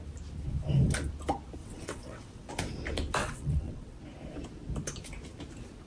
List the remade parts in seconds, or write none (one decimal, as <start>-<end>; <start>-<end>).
1.6-2.5; 3.2-4.0